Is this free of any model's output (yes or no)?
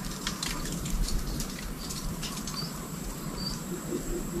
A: no